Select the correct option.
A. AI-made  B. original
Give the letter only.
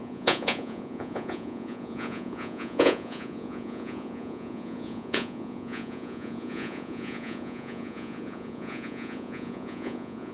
A